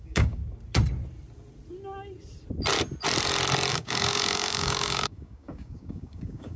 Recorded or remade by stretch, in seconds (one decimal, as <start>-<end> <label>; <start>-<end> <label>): 0.0-0.4 remade; 0.4-3.7 recorded; 3.7-6.6 remade